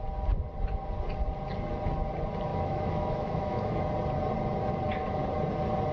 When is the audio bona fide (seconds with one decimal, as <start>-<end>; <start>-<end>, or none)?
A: 0.0-2.5; 3.8-5.9

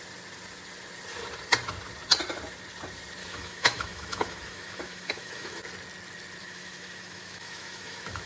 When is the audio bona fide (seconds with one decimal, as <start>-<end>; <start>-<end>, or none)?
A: 0.0-3.2; 5.6-6.4

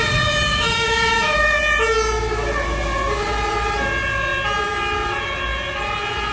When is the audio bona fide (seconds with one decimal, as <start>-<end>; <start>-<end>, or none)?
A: 0.0-0.5; 1.6-6.3

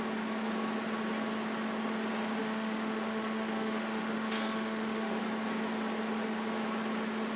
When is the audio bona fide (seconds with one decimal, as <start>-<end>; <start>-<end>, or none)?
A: 0.0-2.4; 5.2-7.4